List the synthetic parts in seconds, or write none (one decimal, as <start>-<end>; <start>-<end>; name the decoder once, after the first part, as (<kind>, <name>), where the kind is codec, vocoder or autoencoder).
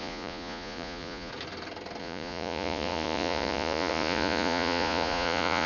0.0-1.3 (vocoder, Vocos); 2.0-5.7